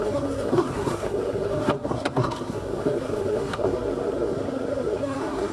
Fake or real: fake